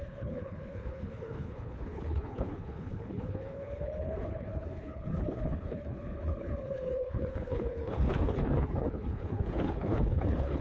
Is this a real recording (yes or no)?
no